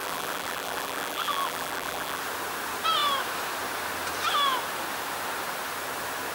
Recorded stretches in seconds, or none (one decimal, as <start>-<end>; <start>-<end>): 2.2-6.3